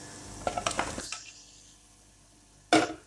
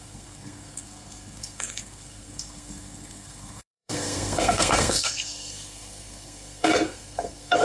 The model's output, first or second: second